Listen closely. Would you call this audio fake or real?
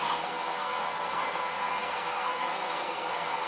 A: fake